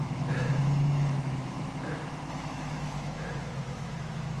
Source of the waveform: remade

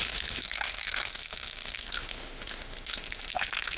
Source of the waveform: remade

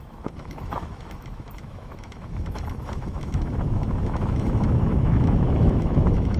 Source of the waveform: remade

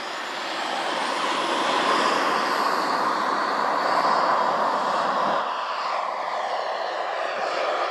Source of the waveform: recorded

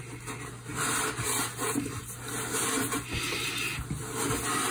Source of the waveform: recorded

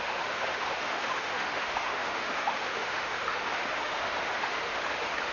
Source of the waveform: remade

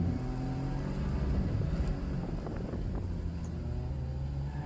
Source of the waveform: recorded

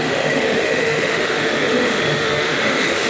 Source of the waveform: remade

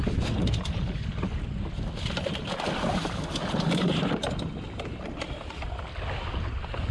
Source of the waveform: recorded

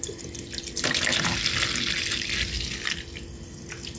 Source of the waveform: recorded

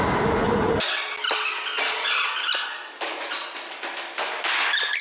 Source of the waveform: recorded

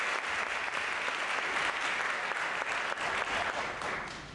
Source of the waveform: recorded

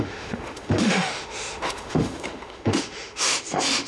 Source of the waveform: remade